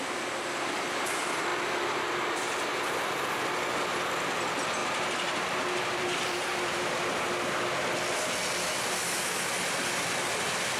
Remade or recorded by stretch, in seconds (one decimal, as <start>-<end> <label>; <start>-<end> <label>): 0.0-4.8 recorded; 4.8-7.0 remade; 7.0-10.8 recorded

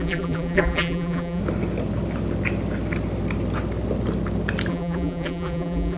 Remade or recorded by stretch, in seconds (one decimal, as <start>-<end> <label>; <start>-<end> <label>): 0.0-1.4 remade; 1.4-4.7 recorded; 4.7-6.0 remade

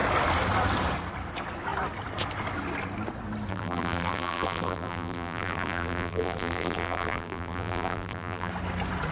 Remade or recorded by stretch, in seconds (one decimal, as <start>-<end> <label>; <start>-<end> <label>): 0.0-3.5 recorded; 3.5-8.5 remade; 8.5-9.1 recorded